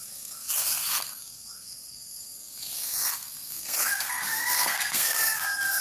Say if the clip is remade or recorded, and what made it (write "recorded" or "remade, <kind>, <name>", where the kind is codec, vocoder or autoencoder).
remade, codec, SNAC